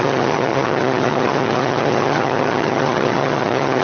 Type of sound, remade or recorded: remade